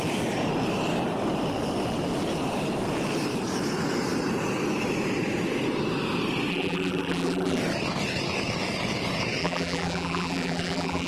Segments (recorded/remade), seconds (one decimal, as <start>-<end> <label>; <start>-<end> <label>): 0.0-6.5 recorded; 6.5-7.6 remade; 7.6-9.4 recorded; 9.4-11.1 remade